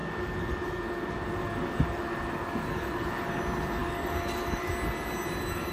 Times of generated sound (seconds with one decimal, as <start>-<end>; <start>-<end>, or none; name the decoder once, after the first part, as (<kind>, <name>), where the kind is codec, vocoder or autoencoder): 0.0-3.4 (codec, DAC); 3.8-4.7